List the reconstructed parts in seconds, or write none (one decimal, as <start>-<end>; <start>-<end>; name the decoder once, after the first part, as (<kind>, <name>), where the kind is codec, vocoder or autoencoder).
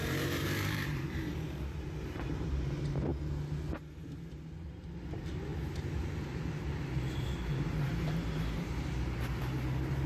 0.0-3.1 (vocoder, BigVGAN v2); 3.8-5.5; 7.0-10.1